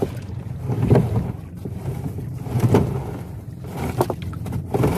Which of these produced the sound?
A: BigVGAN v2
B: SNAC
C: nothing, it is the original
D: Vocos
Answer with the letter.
A